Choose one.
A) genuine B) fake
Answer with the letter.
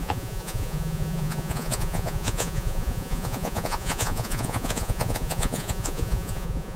B